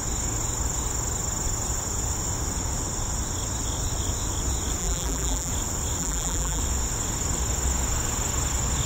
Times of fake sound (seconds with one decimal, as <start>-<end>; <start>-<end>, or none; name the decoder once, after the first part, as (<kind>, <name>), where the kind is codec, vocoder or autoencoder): 4.8-5.5 (vocoder, BigVGAN v2); 6.0-6.6